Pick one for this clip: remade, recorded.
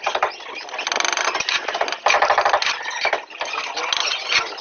recorded